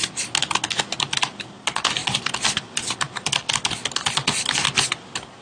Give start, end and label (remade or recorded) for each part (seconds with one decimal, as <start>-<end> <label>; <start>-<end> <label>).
0.0-5.4 recorded